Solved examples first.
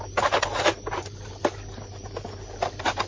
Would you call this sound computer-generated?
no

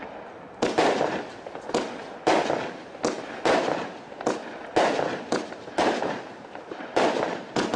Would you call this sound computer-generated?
no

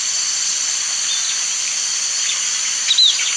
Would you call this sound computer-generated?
no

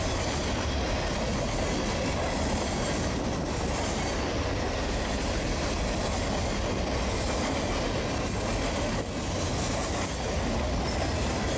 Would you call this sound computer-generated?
no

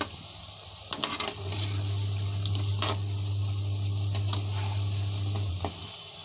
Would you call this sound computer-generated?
no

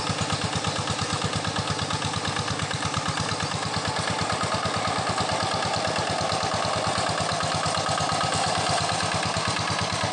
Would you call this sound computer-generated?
no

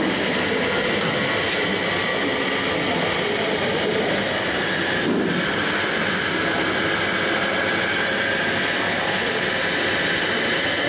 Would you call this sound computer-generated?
no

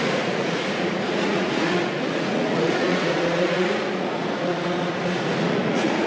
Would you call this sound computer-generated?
yes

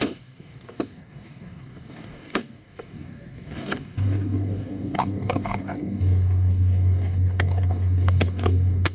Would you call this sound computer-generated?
yes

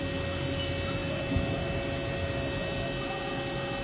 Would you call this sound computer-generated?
no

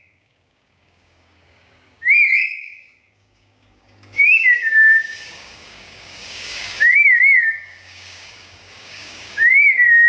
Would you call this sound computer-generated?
yes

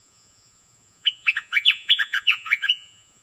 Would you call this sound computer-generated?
yes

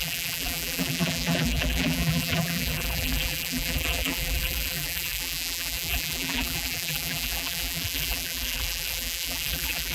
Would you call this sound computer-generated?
yes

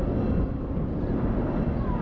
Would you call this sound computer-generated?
no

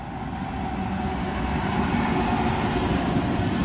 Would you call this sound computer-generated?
no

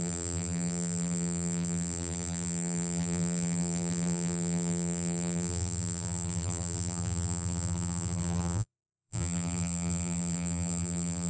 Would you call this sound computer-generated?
yes